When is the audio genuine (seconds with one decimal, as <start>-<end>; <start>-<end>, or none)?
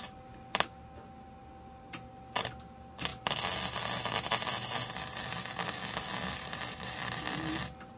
0.0-8.0